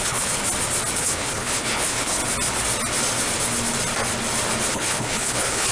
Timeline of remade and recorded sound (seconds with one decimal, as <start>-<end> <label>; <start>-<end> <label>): 0.0-0.4 remade; 0.4-1.0 recorded; 1.0-2.2 remade; 2.2-4.7 recorded; 4.7-5.7 remade